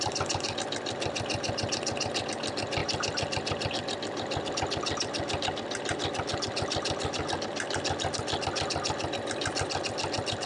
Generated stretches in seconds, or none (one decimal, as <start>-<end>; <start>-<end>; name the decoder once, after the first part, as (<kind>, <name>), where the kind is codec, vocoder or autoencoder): none